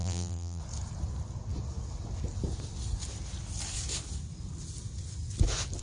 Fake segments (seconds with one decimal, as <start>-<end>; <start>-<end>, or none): 0.0-0.6